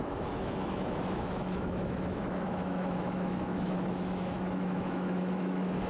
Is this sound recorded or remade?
remade